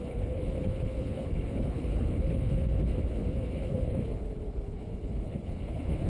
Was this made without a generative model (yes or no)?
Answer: no